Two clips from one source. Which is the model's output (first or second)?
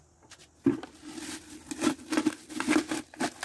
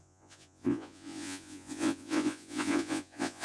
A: second